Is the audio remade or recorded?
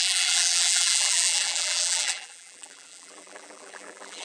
remade